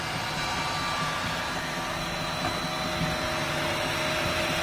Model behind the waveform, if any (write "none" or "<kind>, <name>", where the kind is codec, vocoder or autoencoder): none